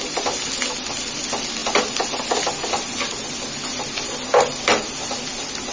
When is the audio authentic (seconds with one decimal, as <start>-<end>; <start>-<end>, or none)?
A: 0.0-5.7